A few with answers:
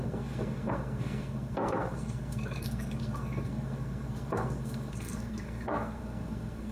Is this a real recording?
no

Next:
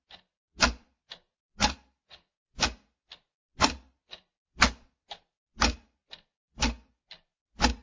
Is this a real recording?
yes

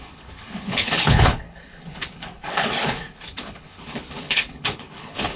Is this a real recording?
no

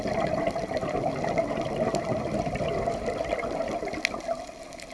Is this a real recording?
yes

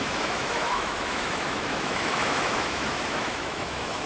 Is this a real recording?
no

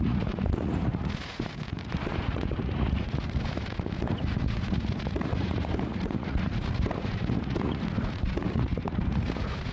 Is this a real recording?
no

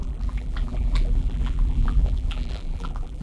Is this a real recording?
no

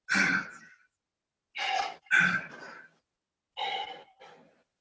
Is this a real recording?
yes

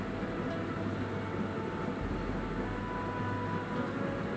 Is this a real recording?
yes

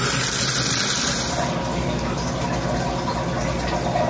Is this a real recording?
yes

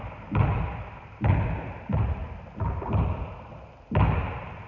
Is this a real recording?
yes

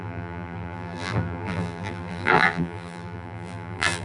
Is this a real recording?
no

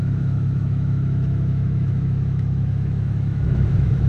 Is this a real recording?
no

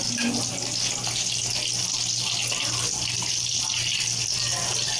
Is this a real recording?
yes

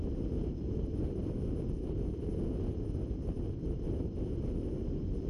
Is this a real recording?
yes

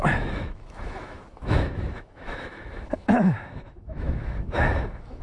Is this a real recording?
no